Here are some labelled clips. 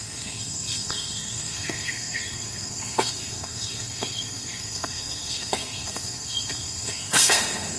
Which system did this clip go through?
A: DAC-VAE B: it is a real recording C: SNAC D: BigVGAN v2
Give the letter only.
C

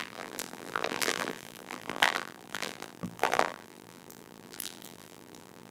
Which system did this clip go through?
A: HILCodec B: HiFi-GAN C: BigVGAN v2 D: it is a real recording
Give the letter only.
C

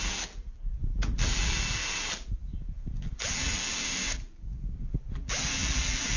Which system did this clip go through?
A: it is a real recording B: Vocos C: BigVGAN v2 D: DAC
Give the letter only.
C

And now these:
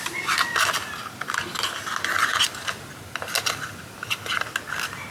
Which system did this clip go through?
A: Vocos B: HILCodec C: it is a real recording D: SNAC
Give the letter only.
C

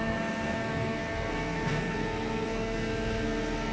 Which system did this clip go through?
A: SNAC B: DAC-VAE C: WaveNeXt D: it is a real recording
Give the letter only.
A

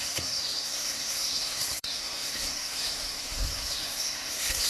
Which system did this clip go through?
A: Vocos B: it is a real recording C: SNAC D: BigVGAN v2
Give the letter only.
C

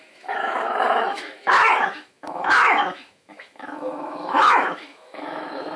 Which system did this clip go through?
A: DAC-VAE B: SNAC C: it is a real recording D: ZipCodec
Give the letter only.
A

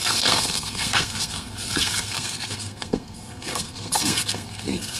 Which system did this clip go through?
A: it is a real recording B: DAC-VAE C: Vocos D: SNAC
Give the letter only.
D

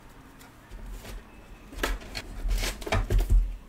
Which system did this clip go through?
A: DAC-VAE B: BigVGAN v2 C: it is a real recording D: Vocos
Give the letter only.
C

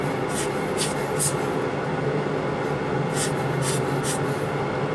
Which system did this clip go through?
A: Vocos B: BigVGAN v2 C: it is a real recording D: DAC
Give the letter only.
C